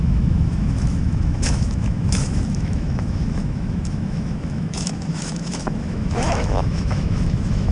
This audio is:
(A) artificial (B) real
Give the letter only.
A